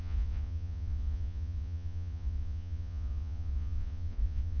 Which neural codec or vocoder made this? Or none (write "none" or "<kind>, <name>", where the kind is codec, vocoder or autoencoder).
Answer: vocoder, Vocos